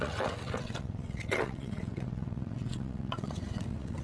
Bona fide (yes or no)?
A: no